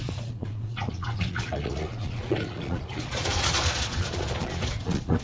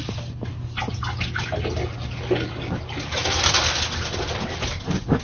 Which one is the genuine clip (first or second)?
second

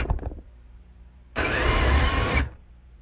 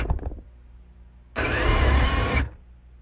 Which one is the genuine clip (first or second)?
second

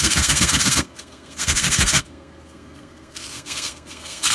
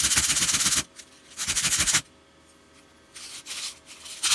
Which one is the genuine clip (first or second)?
second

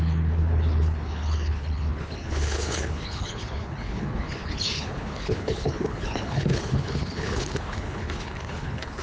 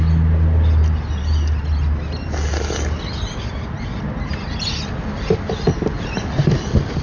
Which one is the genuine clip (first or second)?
second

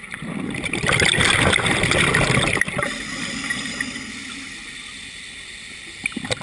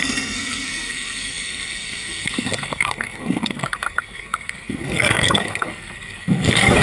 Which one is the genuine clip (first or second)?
first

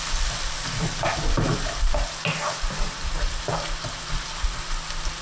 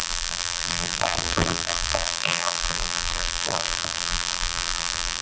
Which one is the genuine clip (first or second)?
first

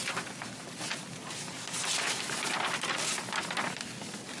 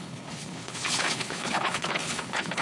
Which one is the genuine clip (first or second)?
first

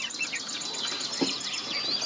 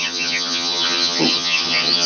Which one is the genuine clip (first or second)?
first